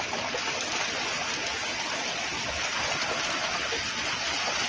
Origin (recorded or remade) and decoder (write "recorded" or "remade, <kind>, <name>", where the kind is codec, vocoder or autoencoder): recorded